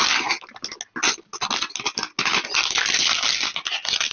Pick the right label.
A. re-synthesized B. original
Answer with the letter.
B